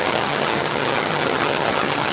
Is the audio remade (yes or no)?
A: yes